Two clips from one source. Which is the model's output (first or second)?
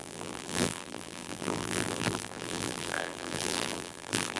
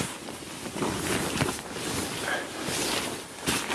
first